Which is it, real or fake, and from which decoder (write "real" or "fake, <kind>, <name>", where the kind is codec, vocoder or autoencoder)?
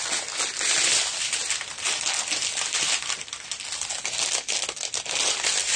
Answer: real